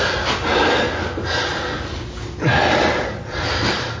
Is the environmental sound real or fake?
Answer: real